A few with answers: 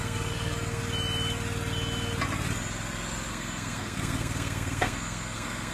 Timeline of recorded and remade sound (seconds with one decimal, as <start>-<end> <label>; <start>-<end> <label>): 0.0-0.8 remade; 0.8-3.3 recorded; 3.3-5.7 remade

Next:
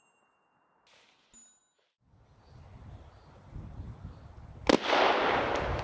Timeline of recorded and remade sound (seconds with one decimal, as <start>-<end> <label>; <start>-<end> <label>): 0.0-5.8 recorded

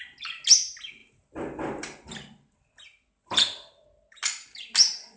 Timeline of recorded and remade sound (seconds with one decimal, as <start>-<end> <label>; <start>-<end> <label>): 0.0-5.2 recorded

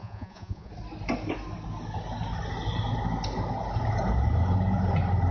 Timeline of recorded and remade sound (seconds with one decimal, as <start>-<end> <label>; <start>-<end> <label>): 0.0-0.7 remade; 0.7-5.3 recorded

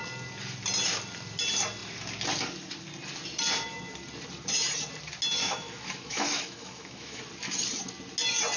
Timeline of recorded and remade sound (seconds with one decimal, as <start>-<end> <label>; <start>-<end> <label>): 0.0-5.4 recorded; 5.4-7.2 remade; 7.2-8.6 recorded